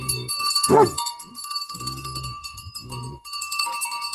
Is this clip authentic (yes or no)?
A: no